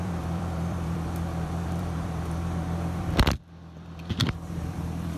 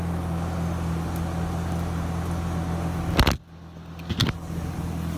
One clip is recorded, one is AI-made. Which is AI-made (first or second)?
first